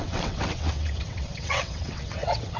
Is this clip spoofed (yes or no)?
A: yes